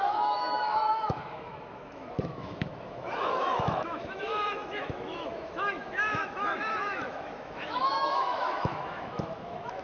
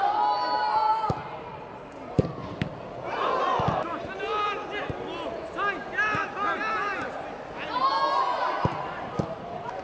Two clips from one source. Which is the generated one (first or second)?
first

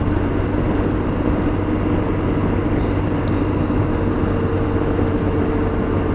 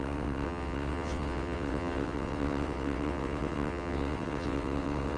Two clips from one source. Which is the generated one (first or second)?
second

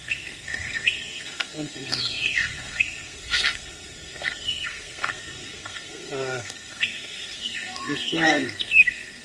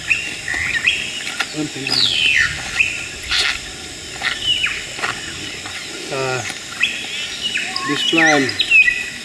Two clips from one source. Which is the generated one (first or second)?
first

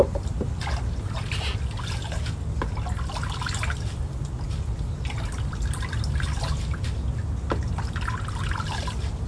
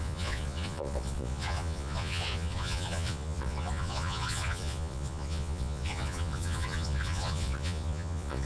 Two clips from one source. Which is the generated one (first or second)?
second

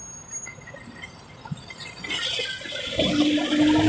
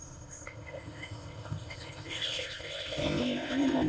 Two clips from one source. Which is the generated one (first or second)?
second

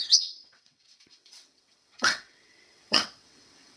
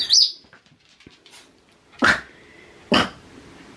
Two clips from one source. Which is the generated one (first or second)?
first